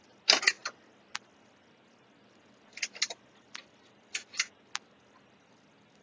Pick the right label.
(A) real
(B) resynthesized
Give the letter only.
A